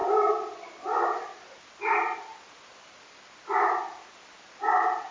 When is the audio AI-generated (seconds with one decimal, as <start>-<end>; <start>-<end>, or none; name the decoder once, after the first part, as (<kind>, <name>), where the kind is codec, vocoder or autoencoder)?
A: none